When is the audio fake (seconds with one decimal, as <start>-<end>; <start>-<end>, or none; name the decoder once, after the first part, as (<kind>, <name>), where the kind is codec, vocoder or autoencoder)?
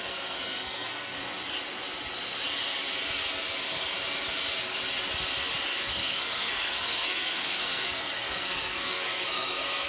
0.0-1.2 (codec, SNAC); 5.8-9.9